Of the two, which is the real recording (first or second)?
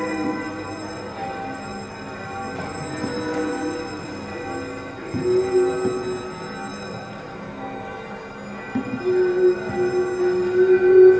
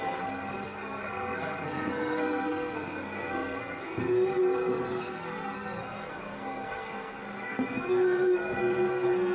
first